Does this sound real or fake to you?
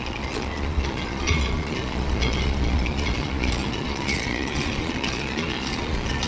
fake